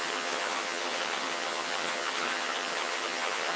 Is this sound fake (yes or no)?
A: yes